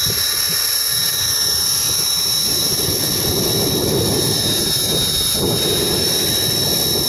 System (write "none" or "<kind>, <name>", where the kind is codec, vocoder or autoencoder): none